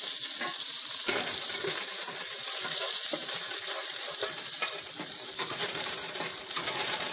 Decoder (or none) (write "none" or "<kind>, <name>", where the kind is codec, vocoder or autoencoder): vocoder, BigVGAN v2